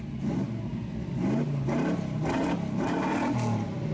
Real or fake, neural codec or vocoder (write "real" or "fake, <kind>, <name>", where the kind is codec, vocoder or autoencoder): real